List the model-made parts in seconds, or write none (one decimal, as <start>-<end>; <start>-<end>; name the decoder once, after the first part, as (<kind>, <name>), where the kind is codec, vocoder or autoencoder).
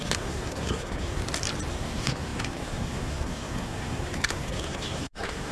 0.0-1.2 (codec, SNAC); 1.7-5.5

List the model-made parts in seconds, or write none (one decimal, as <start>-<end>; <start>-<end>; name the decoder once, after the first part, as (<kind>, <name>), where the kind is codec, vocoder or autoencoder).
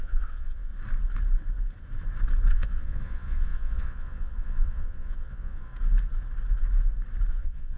0.0-0.7 (vocoder, Vocos); 2.5-5.7; 7.3-7.8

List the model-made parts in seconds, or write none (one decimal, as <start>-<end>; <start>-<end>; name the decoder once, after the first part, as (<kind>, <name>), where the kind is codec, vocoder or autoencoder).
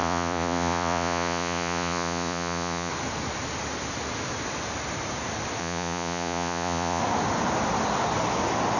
0.0-2.9 (vocoder, Vocos); 5.6-7.0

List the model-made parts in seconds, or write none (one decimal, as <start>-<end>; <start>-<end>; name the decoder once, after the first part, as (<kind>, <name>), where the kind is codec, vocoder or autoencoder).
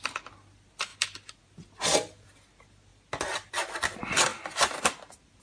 none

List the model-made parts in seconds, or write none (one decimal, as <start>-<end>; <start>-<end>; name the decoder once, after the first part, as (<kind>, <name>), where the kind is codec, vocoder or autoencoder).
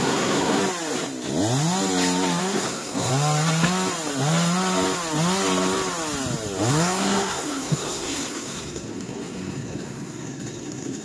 0.0-0.6 (codec, SNAC); 2.4-3.1; 6.7-11.0